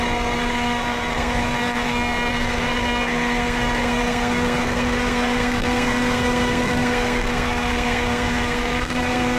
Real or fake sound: fake